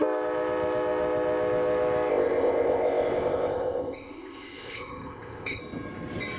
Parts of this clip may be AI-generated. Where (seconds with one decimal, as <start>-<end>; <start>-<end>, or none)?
2.1-5.6